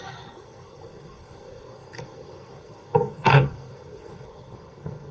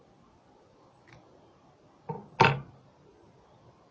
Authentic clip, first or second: second